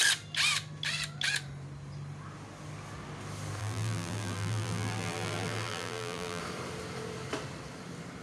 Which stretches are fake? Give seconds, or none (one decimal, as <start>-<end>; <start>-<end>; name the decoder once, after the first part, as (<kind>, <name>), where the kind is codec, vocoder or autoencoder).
3.6-6.4 (vocoder, BigVGAN v2)

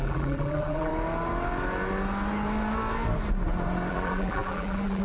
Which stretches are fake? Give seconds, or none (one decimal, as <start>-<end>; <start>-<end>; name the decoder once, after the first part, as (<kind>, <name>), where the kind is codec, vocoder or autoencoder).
0.0-0.9 (vocoder, BigVGAN v2); 3.9-5.0

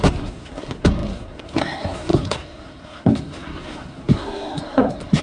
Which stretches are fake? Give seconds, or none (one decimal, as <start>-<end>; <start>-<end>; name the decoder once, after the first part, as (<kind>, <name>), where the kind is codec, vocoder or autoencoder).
0.0-5.2 (codec, SNAC)

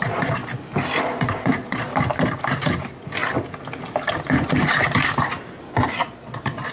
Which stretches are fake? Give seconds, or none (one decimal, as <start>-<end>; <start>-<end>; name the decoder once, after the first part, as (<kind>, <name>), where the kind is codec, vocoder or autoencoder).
0.0-0.4 (vocoder, Vocos); 1.0-1.9; 5.9-6.7

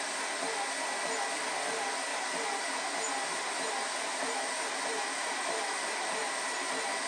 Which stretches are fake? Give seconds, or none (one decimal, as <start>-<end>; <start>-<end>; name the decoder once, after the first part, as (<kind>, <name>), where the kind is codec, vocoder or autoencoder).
2.1-6.3 (vocoder, BigVGAN v2)